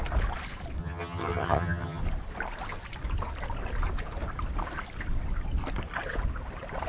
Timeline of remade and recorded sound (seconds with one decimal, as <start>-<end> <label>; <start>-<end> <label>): 0.0-0.8 recorded; 0.8-2.0 remade; 2.0-6.9 recorded

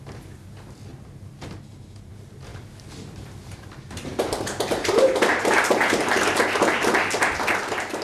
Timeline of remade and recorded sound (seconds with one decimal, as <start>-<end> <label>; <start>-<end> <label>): 0.0-0.9 recorded; 0.9-2.1 remade; 2.1-2.5 recorded; 2.5-5.1 remade; 5.1-8.0 recorded

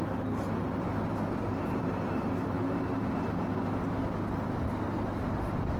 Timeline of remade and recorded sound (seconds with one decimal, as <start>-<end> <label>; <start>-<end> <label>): 0.0-1.5 recorded; 1.5-3.6 remade; 3.6-5.8 recorded

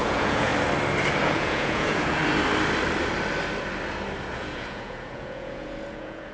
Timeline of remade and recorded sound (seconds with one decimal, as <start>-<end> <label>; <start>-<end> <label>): 0.0-0.5 remade; 0.5-1.2 recorded; 1.2-2.2 remade; 2.2-4.3 recorded; 4.3-6.3 remade

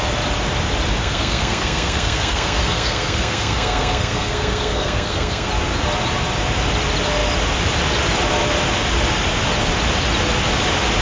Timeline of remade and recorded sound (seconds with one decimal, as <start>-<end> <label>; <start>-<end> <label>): 0.0-1.0 recorded; 1.0-5.5 remade; 5.5-11.0 recorded